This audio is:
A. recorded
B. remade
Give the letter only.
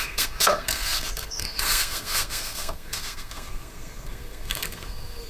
B